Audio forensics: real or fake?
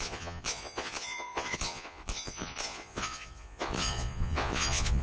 fake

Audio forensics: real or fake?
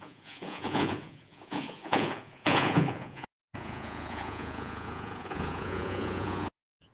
fake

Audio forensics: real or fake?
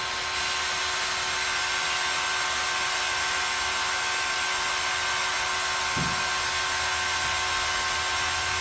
real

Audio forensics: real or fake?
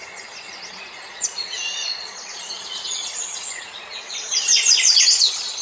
fake